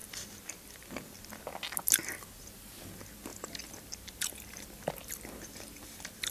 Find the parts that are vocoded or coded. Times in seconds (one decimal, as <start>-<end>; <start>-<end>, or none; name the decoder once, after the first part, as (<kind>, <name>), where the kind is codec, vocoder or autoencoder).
none